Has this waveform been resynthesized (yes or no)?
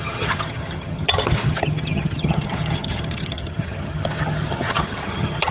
yes